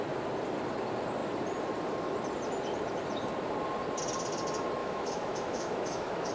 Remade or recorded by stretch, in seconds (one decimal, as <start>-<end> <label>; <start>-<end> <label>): 0.0-4.8 recorded; 4.8-6.3 remade